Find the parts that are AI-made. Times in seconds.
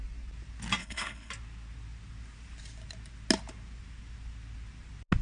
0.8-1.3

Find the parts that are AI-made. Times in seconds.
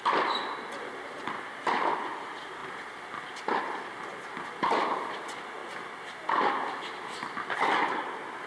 none